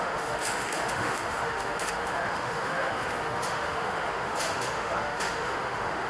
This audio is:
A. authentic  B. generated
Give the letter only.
B